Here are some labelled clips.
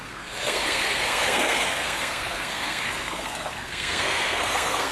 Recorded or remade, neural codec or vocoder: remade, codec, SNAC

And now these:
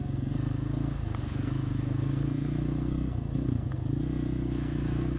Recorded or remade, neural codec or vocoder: remade, codec, SNAC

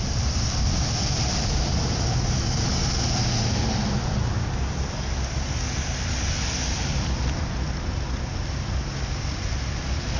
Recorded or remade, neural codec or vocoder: recorded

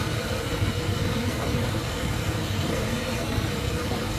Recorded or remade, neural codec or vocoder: remade, codec, SNAC